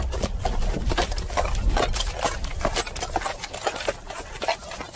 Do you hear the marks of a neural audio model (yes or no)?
no